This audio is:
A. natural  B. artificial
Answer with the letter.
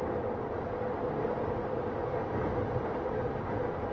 A